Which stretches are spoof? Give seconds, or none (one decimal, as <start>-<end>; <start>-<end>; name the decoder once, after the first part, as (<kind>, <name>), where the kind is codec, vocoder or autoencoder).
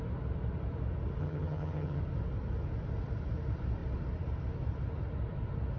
1.2-2.0 (vocoder, HiFi-GAN)